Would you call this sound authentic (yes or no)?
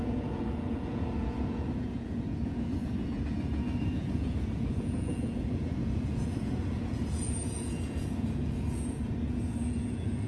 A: no